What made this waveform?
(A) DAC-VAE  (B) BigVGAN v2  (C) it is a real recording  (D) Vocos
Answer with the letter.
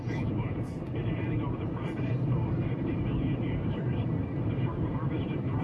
B